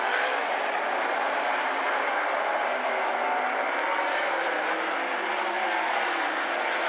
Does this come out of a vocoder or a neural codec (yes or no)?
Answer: no